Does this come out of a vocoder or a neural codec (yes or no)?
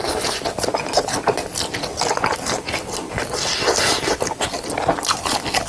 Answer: no